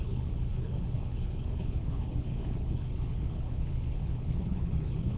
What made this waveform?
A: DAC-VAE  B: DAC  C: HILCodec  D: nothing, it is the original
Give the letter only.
C